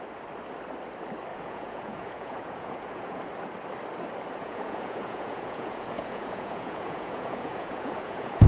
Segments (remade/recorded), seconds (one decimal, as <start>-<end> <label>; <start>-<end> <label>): 0.0-1.3 recorded; 1.3-3.3 remade; 3.3-4.4 recorded; 4.4-8.5 remade